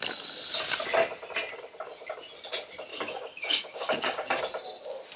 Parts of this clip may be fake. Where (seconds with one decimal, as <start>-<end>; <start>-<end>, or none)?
2.9-4.4